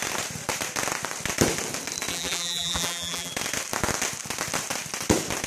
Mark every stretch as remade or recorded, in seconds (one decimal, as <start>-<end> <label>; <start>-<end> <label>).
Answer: 0.0-2.1 recorded; 2.1-3.3 remade; 3.3-5.5 recorded